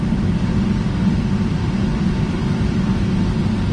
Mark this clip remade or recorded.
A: recorded